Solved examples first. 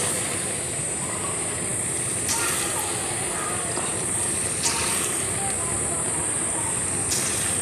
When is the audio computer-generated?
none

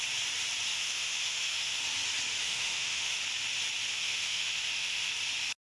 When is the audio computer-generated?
0.7-1.8 (autoencoder, DAC-VAE); 2.4-3.2; 3.9-5.1

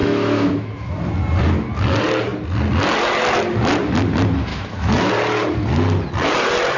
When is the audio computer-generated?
0.0-0.9 (autoencoder, DAC-VAE); 4.5-5.1

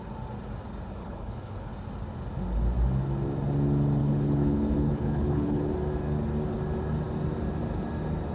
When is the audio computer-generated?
1.0-1.7 (codec, HILCodec); 4.0-5.7

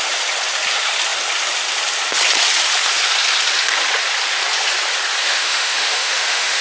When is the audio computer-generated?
5.2-6.6 (autoencoder, DAC-VAE)

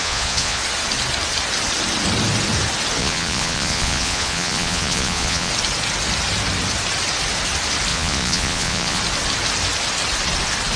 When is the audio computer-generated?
0.0-0.6 (vocoder, Vocos); 3.0-5.5; 7.9-9.0

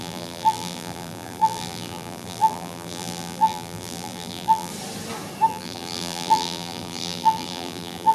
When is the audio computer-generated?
0.0-4.7 (vocoder, BigVGAN v2); 5.5-8.1

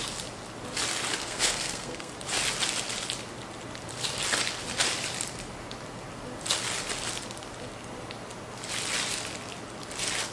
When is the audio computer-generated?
1.2-2.1 (codec, SNAC)